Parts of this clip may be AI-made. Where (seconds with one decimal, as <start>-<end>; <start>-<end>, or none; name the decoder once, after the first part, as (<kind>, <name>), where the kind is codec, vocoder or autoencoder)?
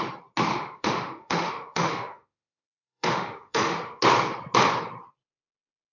0.5-4.0 (autoencoder, DAC-VAE)